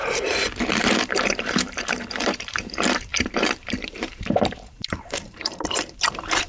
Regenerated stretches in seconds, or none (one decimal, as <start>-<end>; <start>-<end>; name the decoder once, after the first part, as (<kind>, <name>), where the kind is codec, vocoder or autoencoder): 0.0-6.5 (vocoder, BigVGAN v2)

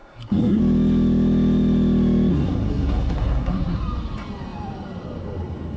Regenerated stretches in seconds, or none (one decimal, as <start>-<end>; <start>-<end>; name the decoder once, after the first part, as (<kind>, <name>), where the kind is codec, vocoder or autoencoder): 0.0-0.6 (codec, SNAC); 2.3-3.8